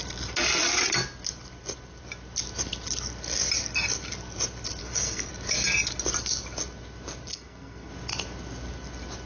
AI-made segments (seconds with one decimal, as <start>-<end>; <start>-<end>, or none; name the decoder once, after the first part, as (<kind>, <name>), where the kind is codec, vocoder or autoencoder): 4.8-5.3 (codec, SNAC); 7.3-7.9